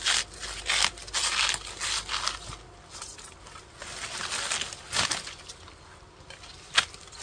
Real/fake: real